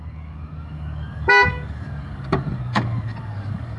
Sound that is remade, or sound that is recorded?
remade